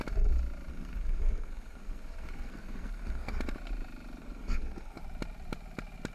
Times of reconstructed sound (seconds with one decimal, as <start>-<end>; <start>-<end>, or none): 0.7-3.3; 4.2-5.0